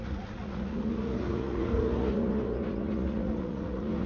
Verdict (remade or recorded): remade